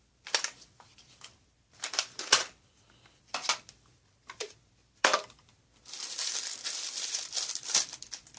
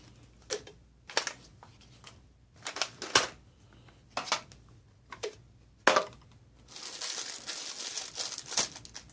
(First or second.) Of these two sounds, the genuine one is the second